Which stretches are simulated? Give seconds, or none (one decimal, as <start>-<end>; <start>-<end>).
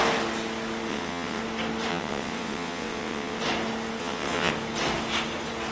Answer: 0.9-1.4; 1.9-3.4; 4.0-4.5